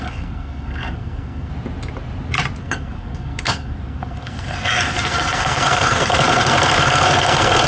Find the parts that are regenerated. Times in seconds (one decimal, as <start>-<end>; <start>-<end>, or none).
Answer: 0.0-1.5; 2.6-7.7